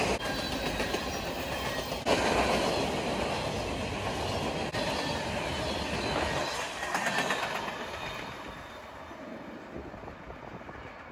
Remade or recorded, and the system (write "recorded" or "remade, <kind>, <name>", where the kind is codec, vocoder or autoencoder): recorded